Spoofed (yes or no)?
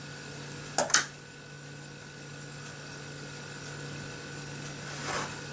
no